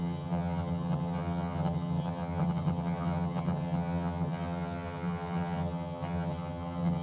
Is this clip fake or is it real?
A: fake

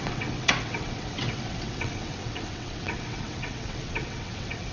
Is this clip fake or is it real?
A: fake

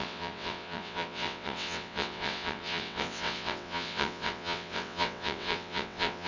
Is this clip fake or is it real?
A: fake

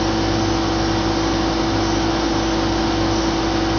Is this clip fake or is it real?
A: real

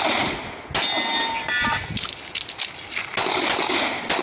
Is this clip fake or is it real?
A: real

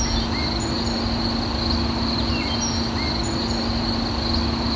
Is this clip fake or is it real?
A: real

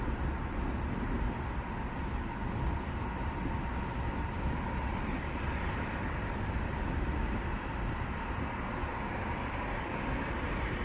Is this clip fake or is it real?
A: real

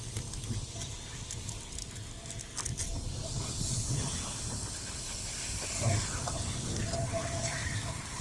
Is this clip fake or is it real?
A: real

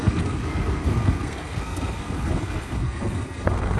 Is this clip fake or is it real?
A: fake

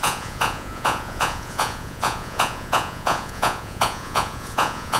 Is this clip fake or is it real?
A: fake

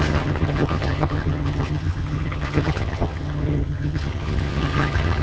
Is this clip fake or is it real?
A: fake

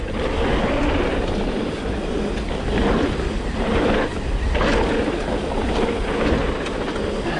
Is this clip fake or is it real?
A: real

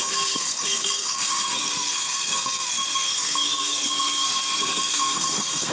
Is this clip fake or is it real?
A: fake